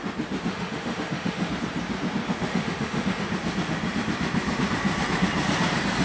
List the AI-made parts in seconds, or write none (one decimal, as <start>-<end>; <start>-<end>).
0.5-1.5; 2.5-3.3